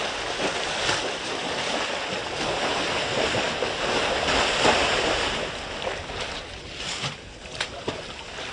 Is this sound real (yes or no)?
yes